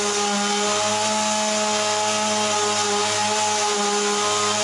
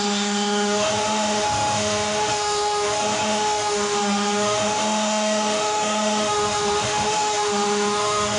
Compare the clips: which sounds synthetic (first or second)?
second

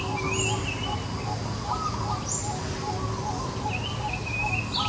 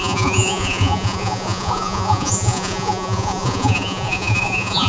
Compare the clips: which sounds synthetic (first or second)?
second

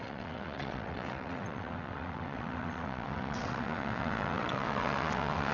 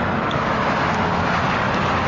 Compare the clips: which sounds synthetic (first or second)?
first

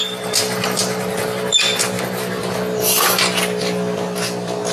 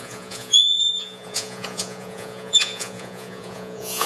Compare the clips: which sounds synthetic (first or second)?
second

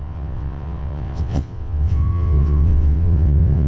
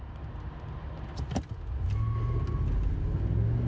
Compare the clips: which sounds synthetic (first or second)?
first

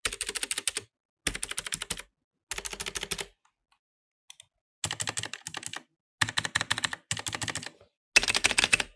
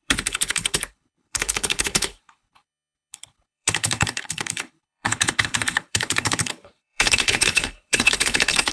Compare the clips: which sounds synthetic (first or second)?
second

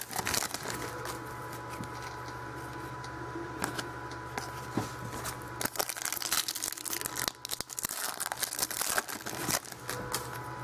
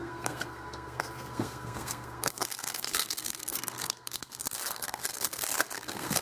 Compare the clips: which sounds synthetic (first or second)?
second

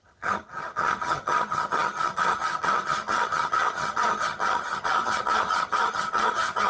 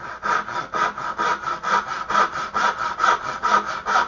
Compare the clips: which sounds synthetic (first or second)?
first